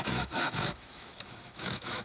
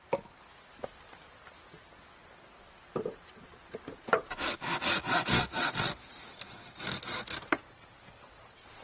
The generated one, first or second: first